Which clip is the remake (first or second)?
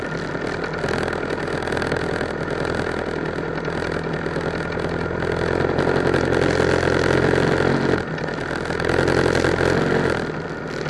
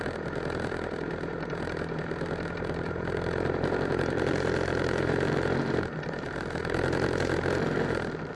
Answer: second